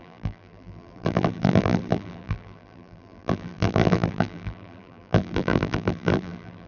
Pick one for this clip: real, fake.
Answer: fake